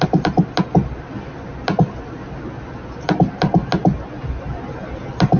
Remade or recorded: recorded